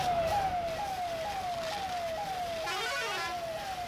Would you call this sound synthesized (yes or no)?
no